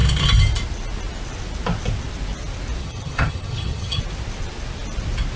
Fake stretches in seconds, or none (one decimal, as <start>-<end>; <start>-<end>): 2.8-4.0